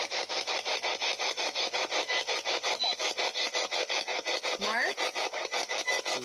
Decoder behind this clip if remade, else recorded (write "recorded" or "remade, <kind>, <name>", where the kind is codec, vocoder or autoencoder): remade, autoencoder, DAC-VAE